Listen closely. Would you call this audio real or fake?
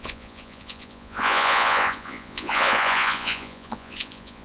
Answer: fake